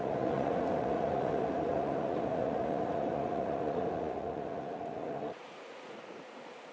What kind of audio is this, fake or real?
fake